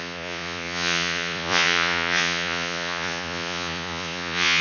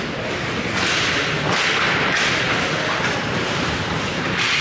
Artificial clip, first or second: first